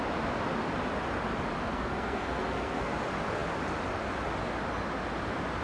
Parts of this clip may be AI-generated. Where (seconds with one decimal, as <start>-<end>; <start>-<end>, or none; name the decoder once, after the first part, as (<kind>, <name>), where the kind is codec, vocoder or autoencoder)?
1.7-3.0 (codec, SNAC)